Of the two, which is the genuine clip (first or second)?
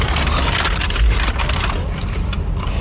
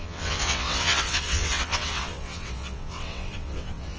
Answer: first